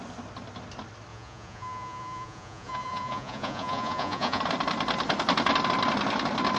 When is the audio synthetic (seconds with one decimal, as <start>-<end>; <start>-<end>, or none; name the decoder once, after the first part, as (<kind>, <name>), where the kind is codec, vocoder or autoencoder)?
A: 1.1-4.4 (vocoder, Vocos)